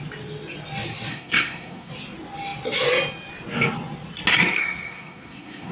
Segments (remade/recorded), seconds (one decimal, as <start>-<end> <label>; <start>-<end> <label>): 0.0-1.1 recorded; 1.1-1.9 remade; 1.9-4.3 recorded; 4.3-5.7 remade